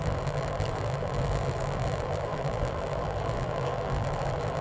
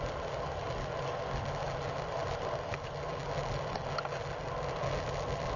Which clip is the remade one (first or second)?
first